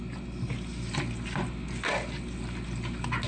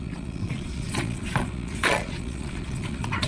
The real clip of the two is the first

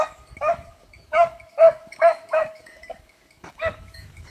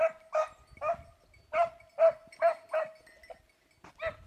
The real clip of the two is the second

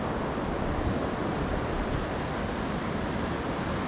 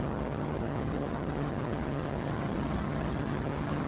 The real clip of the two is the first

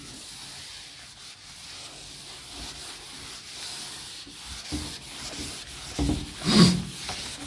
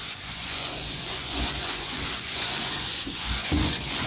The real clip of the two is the first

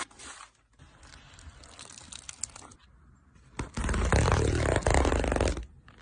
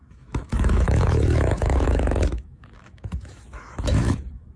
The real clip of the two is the first